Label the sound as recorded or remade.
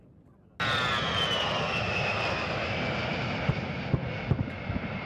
recorded